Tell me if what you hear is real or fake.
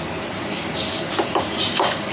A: real